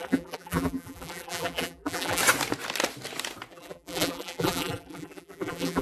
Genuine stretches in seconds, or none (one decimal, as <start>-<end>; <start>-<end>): 2.2-3.5